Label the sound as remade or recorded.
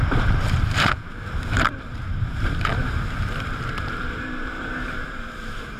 remade